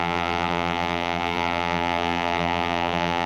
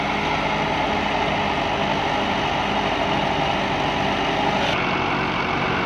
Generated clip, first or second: first